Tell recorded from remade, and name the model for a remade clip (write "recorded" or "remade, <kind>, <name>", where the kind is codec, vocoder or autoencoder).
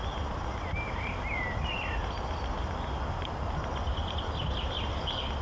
recorded